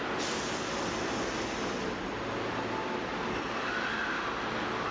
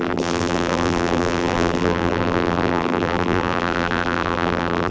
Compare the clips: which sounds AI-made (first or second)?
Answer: second